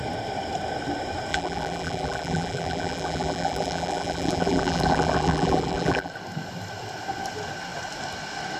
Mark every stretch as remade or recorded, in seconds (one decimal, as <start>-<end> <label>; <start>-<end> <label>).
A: 0.0-1.3 recorded; 1.3-6.1 remade; 6.1-8.6 recorded